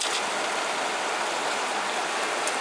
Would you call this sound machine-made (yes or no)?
no